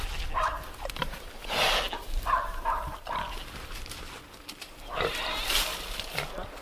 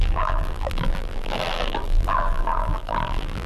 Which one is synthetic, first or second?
second